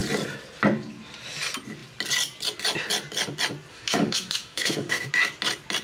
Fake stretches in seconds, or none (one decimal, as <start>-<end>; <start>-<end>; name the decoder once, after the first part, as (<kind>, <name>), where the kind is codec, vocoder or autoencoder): 3.7-5.1 (autoencoder, DAC-VAE)